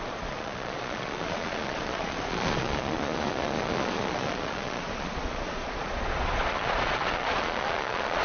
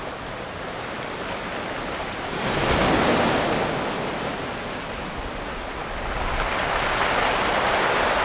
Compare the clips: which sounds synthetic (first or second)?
first